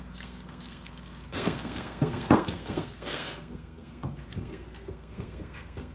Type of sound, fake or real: fake